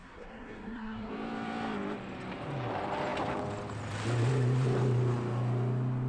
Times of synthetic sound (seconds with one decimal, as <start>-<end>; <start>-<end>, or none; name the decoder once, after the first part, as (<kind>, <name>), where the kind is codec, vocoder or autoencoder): 0.0-1.1 (codec, SNAC)